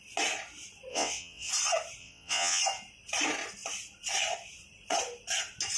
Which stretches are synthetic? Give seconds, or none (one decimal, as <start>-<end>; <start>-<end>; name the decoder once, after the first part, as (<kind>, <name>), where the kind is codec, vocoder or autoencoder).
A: 0.9-1.5 (vocoder, WaveNeXt); 2.0-2.6